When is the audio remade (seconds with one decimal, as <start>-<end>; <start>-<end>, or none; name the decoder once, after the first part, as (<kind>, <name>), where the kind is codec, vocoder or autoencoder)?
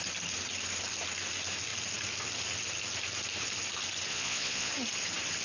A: 4.1-4.7 (vocoder, Vocos)